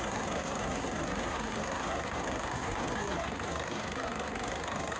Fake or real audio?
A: fake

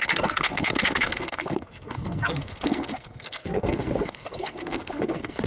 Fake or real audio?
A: fake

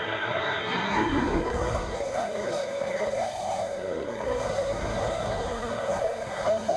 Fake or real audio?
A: fake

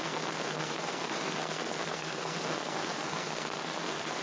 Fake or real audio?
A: fake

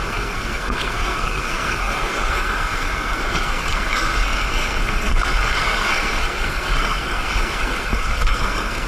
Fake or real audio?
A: fake